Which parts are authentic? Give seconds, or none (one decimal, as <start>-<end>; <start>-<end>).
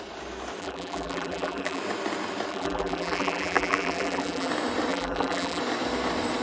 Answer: 0.0-0.6; 1.8-2.5; 4.5-4.9; 5.6-6.4